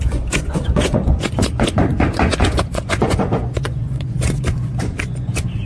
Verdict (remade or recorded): remade